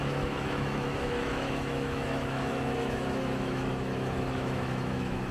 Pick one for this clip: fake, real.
fake